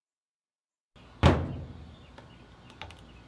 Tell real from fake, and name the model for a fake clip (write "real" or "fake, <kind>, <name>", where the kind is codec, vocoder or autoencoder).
real